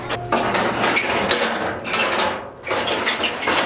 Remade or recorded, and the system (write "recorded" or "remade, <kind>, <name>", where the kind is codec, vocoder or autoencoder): recorded